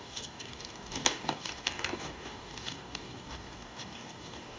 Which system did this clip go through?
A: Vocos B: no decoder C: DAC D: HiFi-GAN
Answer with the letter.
C